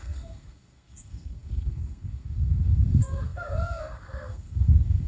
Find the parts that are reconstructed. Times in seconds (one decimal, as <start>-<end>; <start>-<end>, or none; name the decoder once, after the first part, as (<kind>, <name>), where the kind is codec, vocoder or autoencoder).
0.0-5.1 (codec, SNAC)